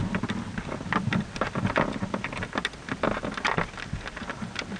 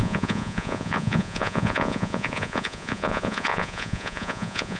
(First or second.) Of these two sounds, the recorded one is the first